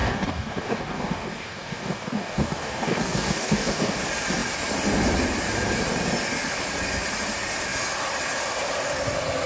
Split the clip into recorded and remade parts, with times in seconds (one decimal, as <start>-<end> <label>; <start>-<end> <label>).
0.0-4.0 remade; 4.0-9.5 recorded